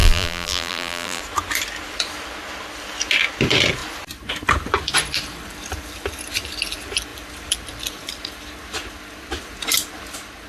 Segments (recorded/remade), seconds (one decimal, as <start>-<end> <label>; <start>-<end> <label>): 0.0-1.2 remade; 1.2-10.5 recorded